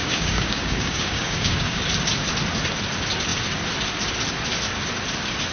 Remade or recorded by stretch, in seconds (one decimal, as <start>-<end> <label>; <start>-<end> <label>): 0.0-1.8 remade; 1.8-5.5 recorded